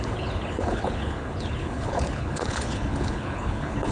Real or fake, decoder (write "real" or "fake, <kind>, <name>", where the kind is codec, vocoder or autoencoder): fake, codec, HILCodec